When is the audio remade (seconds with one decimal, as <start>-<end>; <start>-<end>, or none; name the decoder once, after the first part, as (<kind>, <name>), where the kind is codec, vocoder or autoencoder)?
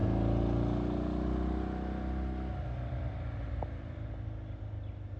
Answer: none